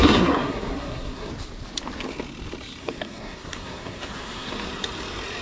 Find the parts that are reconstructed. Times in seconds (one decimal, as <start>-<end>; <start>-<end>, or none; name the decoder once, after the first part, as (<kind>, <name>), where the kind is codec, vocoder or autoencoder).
0.0-1.3 (codec, SNAC); 2.8-4.5